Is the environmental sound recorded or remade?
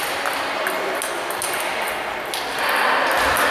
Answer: recorded